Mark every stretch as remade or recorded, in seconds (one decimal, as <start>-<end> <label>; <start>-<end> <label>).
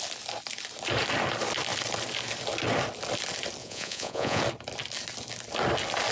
0.0-3.6 recorded; 3.6-4.4 remade; 4.4-6.1 recorded